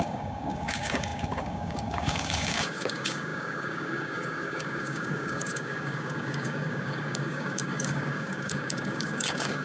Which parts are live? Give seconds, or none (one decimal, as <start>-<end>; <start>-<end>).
none